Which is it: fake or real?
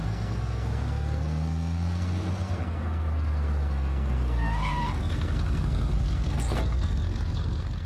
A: fake